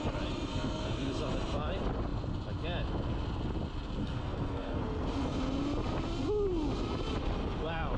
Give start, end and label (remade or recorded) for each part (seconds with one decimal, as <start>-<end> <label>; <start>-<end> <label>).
0.0-0.5 recorded; 0.5-1.1 remade; 1.1-4.0 recorded; 4.0-4.8 remade; 4.8-8.0 recorded